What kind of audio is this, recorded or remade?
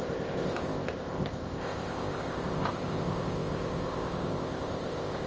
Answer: remade